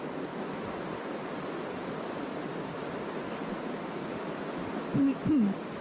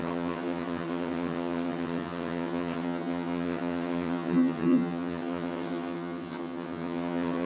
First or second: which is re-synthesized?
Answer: second